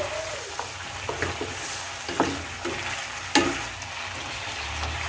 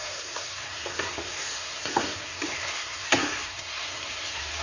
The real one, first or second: first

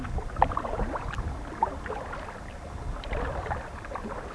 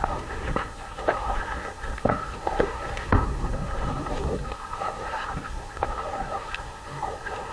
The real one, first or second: first